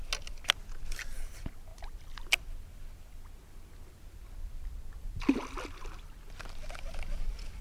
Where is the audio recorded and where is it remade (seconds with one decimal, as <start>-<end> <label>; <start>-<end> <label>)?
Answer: 0.0-7.6 recorded